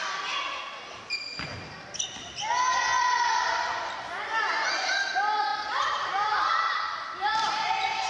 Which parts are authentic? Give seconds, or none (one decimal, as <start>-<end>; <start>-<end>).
0.0-5.5